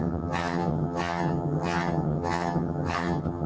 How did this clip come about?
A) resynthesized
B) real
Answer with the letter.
A